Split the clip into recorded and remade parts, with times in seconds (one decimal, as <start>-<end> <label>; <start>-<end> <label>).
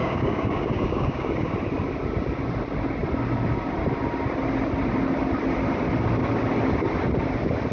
0.0-1.5 remade; 1.5-7.7 recorded